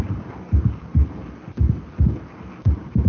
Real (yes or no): yes